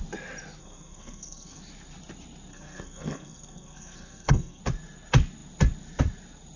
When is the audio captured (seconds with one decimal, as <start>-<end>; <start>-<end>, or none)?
0.0-0.6; 1.6-2.5; 4.6-6.6